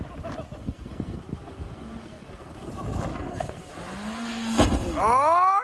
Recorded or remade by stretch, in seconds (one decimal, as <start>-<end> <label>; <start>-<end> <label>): 0.0-0.6 recorded; 0.6-2.7 remade; 2.7-3.1 recorded; 3.1-3.7 remade; 3.7-5.6 recorded